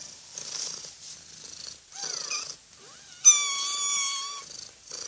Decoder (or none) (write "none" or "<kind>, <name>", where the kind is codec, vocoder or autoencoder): none